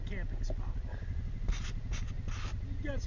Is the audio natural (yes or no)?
yes